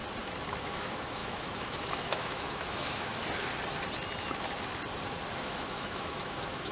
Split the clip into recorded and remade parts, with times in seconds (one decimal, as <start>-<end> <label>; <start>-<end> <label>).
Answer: 0.0-0.6 recorded; 0.6-3.1 remade; 3.1-5.3 recorded; 5.3-6.7 remade